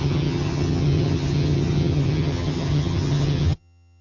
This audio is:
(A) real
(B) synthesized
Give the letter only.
B